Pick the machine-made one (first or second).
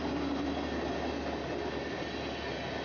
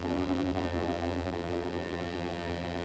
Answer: second